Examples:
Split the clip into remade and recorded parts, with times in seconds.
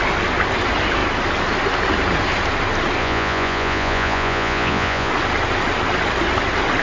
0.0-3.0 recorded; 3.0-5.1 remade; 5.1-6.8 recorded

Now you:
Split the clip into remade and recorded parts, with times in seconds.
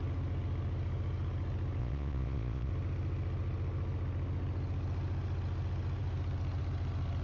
0.0-1.8 recorded; 1.8-2.7 remade; 2.7-7.2 recorded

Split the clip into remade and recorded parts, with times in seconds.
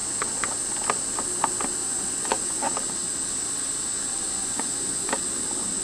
0.0-1.8 recorded; 1.8-2.7 remade; 2.7-4.4 recorded; 4.4-5.1 remade; 5.1-5.8 recorded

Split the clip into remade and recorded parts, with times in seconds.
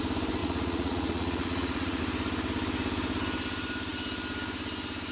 0.0-0.4 recorded; 0.4-2.0 remade; 2.0-5.1 recorded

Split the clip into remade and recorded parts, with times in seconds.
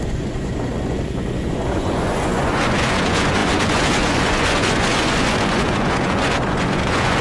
0.0-7.2 remade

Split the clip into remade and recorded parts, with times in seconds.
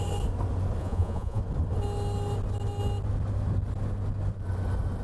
0.0-0.8 recorded; 0.8-1.4 remade; 1.4-5.0 recorded